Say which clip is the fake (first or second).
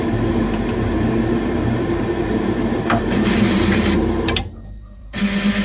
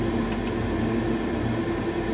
first